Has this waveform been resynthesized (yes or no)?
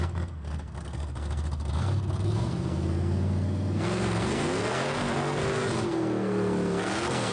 yes